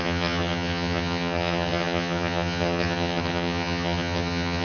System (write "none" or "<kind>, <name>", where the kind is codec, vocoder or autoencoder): vocoder, HiFi-GAN